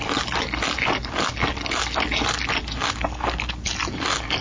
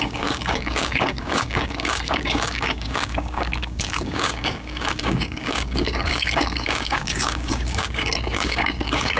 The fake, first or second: second